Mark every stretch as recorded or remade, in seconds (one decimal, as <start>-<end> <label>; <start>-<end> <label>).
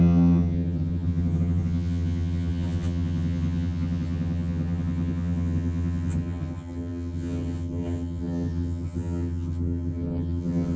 0.0-10.8 remade